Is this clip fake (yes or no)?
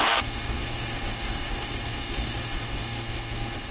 yes